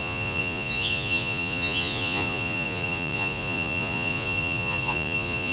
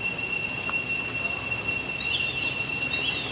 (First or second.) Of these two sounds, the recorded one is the second